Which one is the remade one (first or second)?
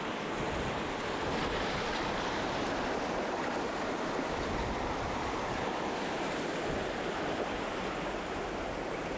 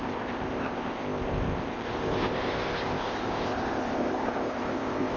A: second